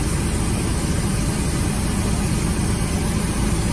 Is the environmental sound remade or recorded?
recorded